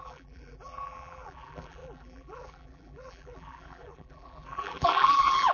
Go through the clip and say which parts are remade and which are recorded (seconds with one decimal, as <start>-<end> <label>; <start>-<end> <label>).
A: 0.0-5.5 remade